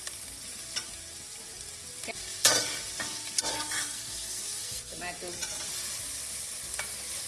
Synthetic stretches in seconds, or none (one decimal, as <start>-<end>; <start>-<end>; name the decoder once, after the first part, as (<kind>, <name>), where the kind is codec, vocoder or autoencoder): 3.5-5.0 (codec, SNAC)